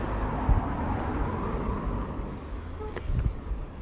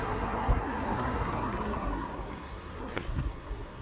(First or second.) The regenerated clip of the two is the second